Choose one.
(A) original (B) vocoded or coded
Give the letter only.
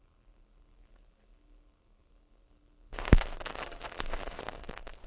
B